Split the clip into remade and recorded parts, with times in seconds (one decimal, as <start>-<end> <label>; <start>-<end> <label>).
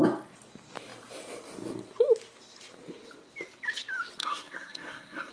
0.0-4.2 recorded; 4.2-5.3 remade